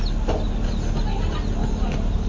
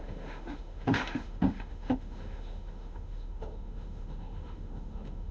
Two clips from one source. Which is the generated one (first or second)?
second